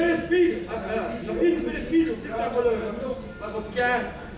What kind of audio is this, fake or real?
real